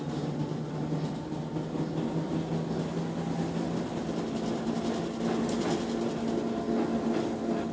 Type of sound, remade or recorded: recorded